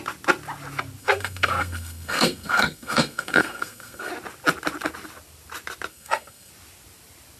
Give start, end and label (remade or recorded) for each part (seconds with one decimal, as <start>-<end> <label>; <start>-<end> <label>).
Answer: 0.0-1.0 recorded; 1.0-4.1 remade; 4.1-5.9 recorded; 5.9-6.5 remade; 6.5-7.4 recorded